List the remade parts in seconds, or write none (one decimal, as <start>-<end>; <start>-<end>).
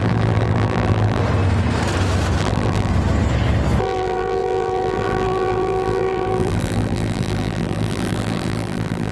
0.0-1.2; 2.4-2.9; 3.8-9.1